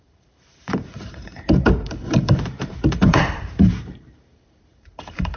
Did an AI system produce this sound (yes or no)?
yes